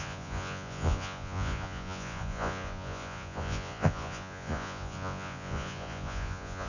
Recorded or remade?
remade